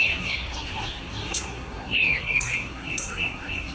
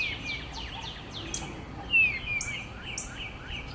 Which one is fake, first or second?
first